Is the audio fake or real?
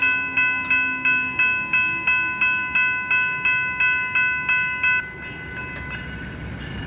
real